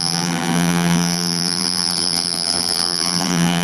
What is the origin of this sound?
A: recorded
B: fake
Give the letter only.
B